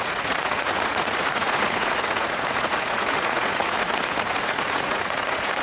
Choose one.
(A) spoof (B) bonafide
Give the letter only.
A